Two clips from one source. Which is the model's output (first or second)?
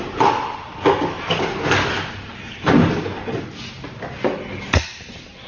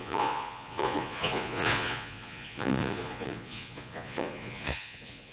second